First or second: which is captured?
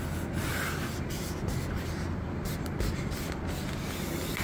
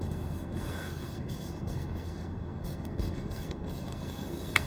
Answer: first